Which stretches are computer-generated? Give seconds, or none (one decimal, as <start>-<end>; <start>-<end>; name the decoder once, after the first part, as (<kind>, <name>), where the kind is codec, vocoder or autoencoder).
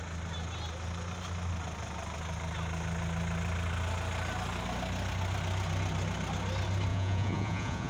6.9-7.9 (vocoder, Vocos)